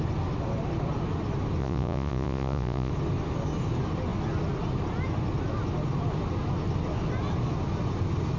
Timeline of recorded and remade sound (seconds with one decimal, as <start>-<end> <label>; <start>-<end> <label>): 0.0-1.6 recorded; 1.6-2.9 remade; 2.9-8.4 recorded